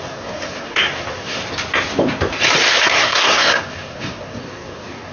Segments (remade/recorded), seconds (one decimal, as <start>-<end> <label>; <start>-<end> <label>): 0.0-1.4 remade; 1.4-2.8 recorded; 2.8-5.1 remade